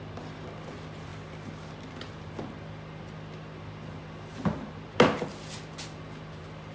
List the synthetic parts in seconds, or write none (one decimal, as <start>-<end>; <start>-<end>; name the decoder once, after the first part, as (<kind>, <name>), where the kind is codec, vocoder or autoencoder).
none